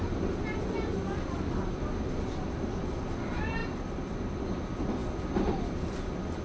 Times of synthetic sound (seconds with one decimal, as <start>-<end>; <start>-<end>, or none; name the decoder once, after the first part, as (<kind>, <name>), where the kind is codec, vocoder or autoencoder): none